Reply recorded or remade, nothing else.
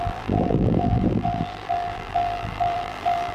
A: remade